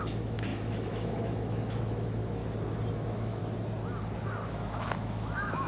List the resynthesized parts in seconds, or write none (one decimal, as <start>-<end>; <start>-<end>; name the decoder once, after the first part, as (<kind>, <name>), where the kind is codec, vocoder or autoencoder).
0.0-2.4 (autoencoder, DAC-VAE); 2.9-3.4; 4.5-5.7